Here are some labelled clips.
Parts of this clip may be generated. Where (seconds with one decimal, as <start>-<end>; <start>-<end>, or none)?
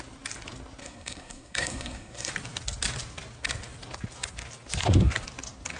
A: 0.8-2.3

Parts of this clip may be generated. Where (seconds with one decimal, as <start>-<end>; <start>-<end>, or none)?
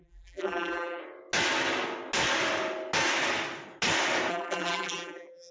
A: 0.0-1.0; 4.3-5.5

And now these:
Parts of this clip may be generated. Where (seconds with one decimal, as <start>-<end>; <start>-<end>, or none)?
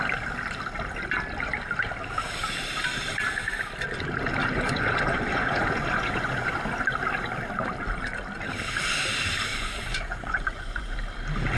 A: 4.4-6.6; 9.5-11.0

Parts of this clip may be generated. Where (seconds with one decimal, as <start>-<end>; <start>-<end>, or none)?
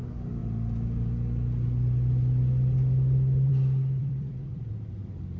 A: 4.0-5.0